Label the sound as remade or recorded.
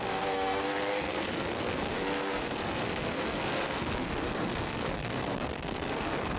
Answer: remade